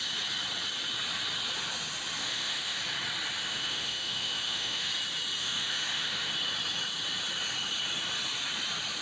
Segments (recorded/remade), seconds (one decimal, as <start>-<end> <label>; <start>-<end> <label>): 0.0-2.2 recorded; 2.2-2.8 remade; 2.8-3.4 recorded; 3.4-4.9 remade; 4.9-5.4 recorded; 5.4-6.3 remade; 6.3-9.0 recorded